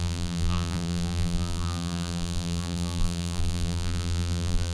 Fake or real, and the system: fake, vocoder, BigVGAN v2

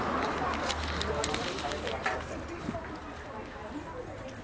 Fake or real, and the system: real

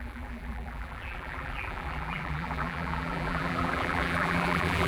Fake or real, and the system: fake, vocoder, BigVGAN v2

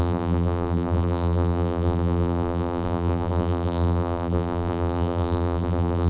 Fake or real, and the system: fake, vocoder, BigVGAN v2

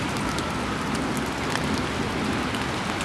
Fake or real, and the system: real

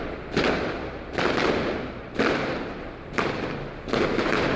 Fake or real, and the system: real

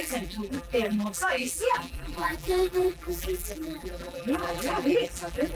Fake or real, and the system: fake, vocoder, BigVGAN v2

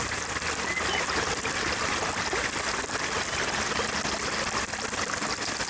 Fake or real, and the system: real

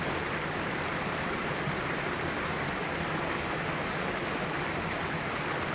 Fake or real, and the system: fake, vocoder, BigVGAN v2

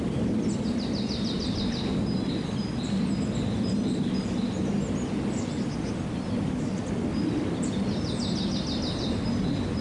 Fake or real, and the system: real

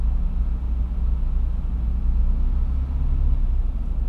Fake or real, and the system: real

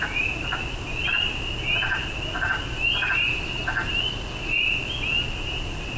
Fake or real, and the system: real